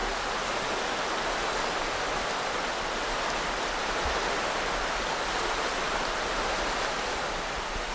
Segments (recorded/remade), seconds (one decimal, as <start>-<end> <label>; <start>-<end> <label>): 0.0-7.9 recorded